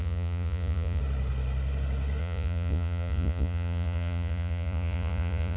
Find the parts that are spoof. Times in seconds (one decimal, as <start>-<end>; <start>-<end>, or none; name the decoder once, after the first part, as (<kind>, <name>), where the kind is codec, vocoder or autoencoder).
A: 0.0-1.0 (vocoder, Vocos); 2.2-5.6